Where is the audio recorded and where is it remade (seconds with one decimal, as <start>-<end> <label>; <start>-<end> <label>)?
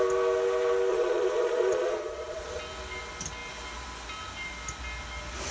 0.0-0.9 recorded; 0.9-2.6 remade; 2.6-5.5 recorded